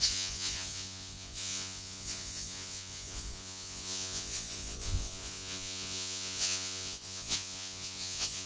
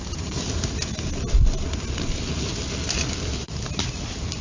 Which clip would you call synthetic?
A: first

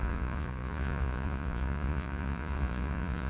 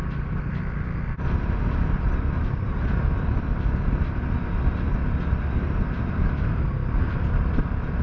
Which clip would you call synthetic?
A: first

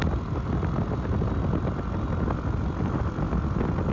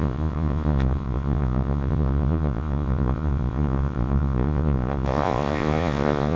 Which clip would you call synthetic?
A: second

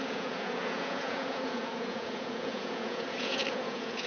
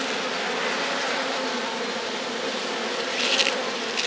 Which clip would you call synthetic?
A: first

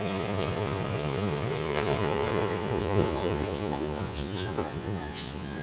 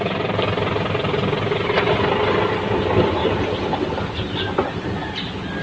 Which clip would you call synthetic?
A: first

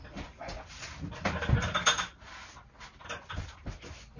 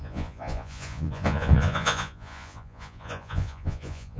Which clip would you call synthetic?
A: second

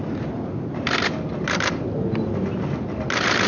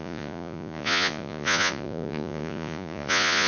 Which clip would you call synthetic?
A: second